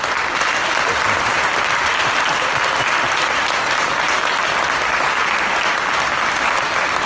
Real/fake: real